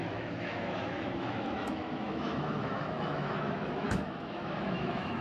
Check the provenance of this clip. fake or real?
fake